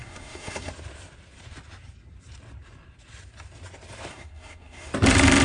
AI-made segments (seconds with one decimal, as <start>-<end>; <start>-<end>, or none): 0.0-0.7; 4.1-4.9